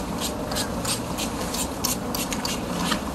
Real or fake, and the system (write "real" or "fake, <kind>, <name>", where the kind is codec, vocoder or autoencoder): real